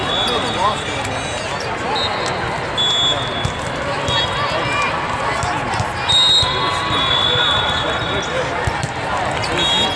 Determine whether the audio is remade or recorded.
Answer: recorded